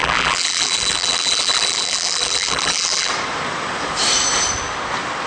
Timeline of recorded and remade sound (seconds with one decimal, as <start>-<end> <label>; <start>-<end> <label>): 0.0-3.1 remade; 3.1-5.3 recorded